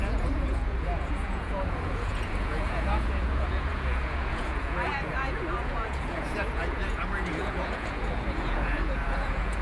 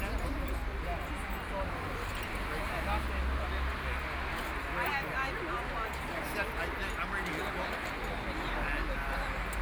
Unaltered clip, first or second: second